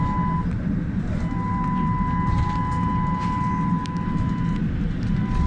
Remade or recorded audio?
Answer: recorded